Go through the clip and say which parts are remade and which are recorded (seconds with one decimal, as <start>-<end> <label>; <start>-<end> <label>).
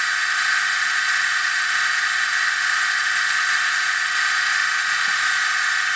0.0-6.0 recorded